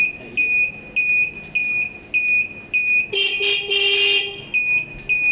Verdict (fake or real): real